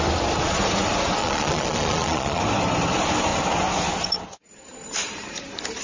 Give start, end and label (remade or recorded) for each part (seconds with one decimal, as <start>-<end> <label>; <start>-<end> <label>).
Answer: 0.0-1.2 recorded; 1.2-2.4 remade; 2.4-5.8 recorded